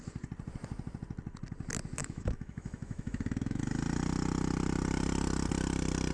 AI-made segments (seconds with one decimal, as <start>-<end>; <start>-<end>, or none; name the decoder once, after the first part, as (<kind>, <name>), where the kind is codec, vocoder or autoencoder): 2.0-3.6 (autoencoder, DAC-VAE)